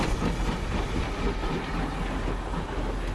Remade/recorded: recorded